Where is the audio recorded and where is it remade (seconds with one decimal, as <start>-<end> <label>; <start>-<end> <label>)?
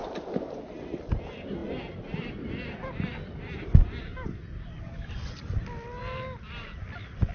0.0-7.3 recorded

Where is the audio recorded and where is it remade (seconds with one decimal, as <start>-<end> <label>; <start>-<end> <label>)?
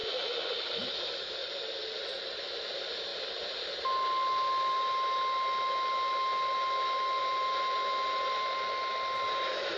0.0-1.4 recorded; 1.4-2.4 remade; 2.4-9.8 recorded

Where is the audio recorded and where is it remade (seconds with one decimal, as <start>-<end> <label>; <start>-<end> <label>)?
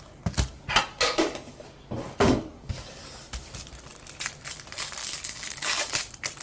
0.0-0.9 recorded; 0.9-3.0 remade; 3.0-5.0 recorded; 5.0-5.9 remade; 5.9-6.4 recorded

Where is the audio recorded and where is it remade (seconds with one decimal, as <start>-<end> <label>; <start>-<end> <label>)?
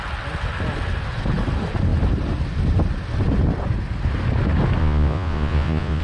0.0-4.8 recorded; 4.8-6.0 remade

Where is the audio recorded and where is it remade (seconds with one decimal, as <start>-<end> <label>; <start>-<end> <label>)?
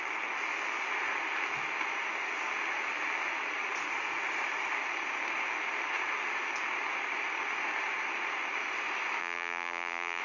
0.0-9.2 recorded; 9.2-10.2 remade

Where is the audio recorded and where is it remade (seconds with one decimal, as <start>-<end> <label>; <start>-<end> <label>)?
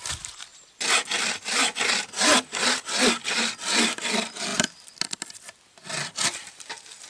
0.0-7.1 recorded